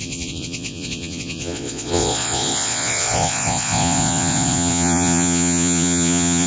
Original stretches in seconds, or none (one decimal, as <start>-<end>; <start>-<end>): none